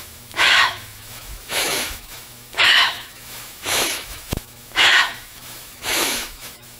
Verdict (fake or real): fake